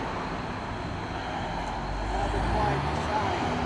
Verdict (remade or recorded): recorded